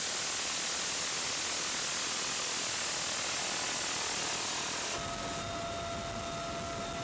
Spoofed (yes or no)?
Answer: no